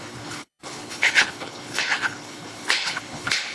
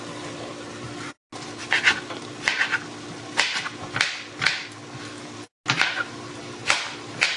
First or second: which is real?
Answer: second